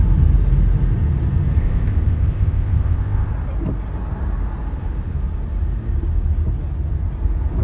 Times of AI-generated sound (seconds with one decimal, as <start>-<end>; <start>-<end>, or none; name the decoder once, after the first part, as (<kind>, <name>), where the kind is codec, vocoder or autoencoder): 1.6-3.3 (codec, ZipCodec)